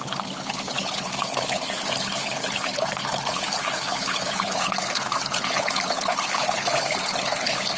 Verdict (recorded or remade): remade